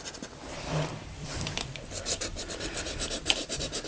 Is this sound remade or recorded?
remade